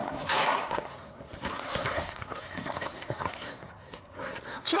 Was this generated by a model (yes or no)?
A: yes